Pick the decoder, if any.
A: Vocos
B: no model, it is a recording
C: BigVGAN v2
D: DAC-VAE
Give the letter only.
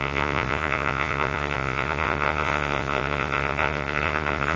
A